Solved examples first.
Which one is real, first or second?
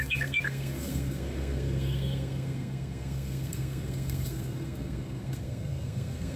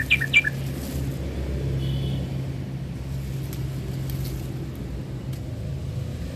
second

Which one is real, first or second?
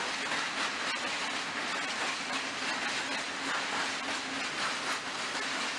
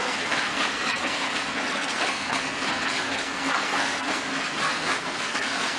first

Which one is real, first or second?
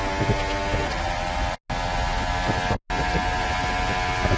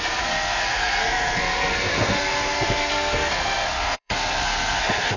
first